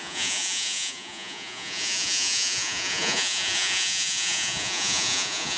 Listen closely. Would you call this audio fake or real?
fake